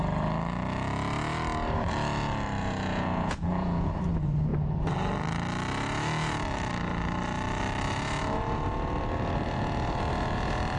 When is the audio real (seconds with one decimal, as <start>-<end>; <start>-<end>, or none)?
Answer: 0.0-2.6; 4.0-10.8